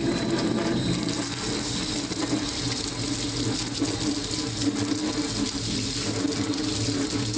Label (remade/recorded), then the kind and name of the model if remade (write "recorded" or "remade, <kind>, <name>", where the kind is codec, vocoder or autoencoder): recorded